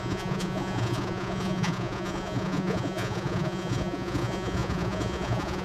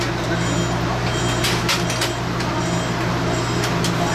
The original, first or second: second